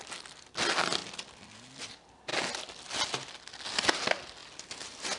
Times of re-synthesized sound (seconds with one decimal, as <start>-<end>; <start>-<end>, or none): none